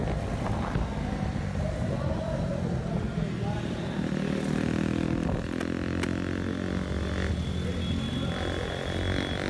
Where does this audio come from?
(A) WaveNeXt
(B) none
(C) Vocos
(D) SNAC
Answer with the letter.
B